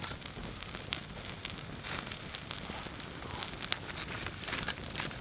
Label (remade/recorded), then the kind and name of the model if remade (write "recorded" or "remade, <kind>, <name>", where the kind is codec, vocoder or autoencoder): recorded